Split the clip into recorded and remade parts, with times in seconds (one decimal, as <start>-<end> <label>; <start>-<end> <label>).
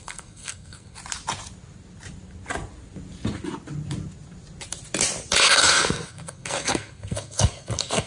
0.0-1.0 remade; 1.0-5.4 recorded; 5.4-8.1 remade